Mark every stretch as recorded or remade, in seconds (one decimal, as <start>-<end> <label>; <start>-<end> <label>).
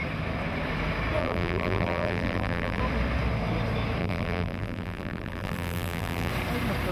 0.0-1.2 recorded; 1.2-2.8 remade; 2.8-4.0 recorded; 4.0-6.3 remade; 6.3-6.9 recorded